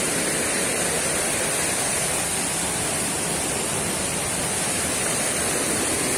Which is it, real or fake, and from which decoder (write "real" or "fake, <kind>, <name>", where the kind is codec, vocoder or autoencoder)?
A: real